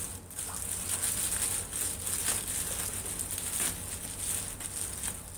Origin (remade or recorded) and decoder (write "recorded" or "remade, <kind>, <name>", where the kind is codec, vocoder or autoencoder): recorded